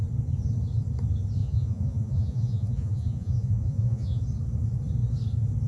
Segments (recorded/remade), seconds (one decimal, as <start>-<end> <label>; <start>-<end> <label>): 0.0-1.4 recorded; 1.4-4.2 remade; 4.2-5.7 recorded